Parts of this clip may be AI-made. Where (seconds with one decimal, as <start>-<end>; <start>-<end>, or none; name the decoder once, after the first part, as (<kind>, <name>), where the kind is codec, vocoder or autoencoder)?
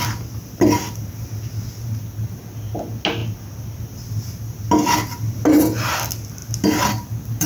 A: none